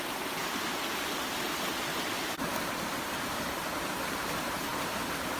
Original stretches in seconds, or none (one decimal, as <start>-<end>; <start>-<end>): 0.0-5.4